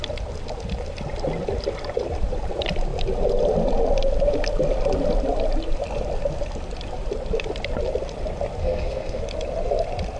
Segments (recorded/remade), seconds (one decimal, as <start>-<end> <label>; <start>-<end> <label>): 0.0-8.6 recorded; 8.6-9.2 remade; 9.2-10.2 recorded